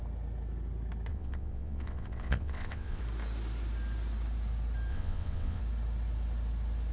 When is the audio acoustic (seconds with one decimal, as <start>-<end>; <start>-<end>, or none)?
0.0-1.1; 3.0-4.9; 5.6-6.9